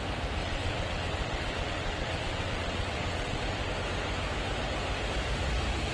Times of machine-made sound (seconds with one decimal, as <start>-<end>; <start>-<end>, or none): 0.4-3.7